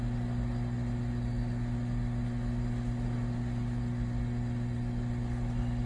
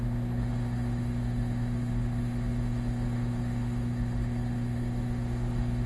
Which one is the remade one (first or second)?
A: second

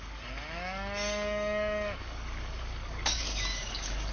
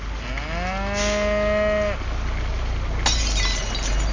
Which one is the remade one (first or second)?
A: first